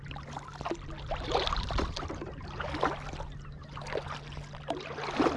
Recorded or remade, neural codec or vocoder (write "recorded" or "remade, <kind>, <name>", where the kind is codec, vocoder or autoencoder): recorded